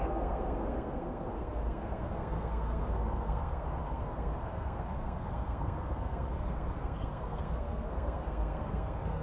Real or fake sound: fake